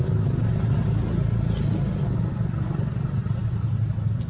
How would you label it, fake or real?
real